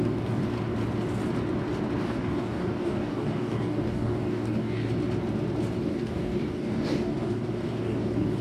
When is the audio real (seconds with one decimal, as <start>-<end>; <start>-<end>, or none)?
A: 0.4-2.0; 4.9-5.8